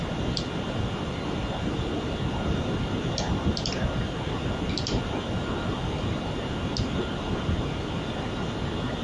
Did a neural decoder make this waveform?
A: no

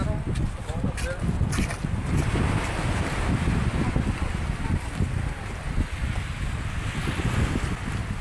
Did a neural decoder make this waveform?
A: no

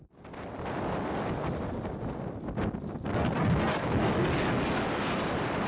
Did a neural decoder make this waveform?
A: no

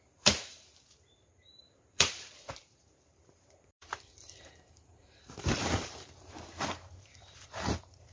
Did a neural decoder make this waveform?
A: yes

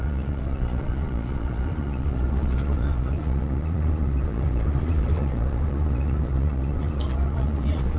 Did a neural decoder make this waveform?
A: yes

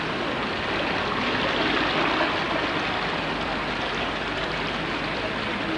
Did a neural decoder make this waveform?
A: no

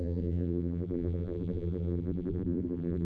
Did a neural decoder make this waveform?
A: yes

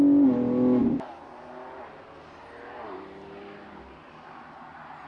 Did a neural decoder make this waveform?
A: no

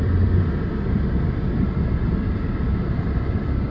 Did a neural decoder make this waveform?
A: yes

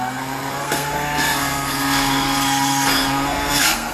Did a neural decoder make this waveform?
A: yes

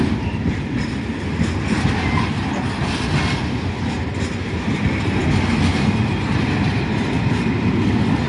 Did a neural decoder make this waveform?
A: no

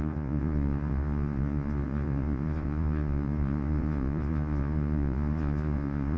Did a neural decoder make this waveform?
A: yes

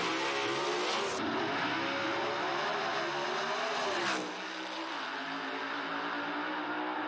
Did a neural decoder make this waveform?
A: no